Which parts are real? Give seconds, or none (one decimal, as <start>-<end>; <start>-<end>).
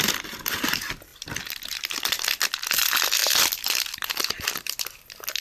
0.0-5.4